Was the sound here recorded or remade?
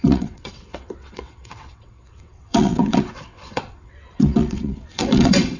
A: remade